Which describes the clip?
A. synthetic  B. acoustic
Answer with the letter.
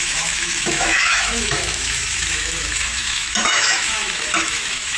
A